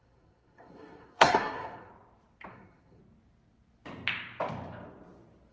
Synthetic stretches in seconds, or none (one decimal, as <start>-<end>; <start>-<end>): 0.0-1.9; 2.5-3.0